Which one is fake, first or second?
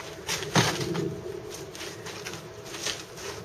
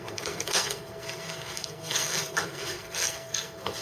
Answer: second